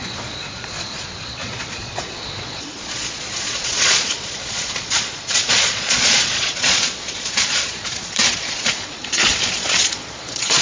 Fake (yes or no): yes